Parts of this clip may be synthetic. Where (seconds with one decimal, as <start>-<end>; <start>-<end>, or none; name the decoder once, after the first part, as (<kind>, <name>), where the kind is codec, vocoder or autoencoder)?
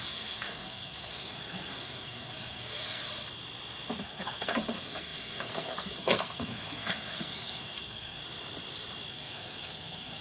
0.0-3.0 (codec, SNAC); 4.0-8.2; 9.1-10.2